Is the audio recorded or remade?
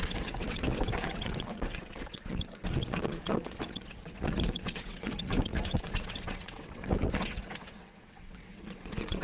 remade